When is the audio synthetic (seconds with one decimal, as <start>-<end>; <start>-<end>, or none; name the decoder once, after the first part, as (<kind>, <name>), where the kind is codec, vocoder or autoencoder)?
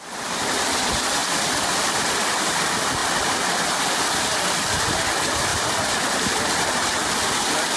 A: none